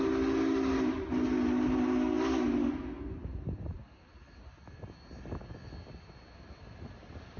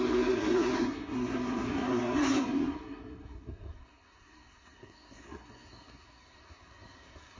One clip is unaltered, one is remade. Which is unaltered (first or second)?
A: first